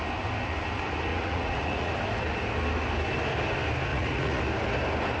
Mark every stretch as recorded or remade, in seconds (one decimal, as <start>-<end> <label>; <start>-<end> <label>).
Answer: 0.0-1.1 recorded; 1.1-1.9 remade; 1.9-3.9 recorded; 3.9-4.4 remade; 4.4-5.2 recorded